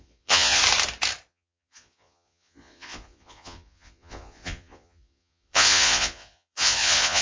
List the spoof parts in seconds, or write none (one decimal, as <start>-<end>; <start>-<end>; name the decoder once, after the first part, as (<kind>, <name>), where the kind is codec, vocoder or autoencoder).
0.0-0.6 (vocoder, Vocos); 1.3-7.2